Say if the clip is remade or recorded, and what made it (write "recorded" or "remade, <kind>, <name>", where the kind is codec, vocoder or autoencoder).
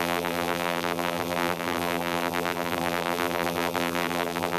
remade, vocoder, BigVGAN v2